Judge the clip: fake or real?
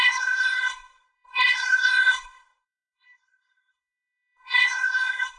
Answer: fake